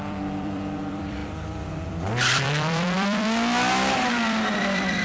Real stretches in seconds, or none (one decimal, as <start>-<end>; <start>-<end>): none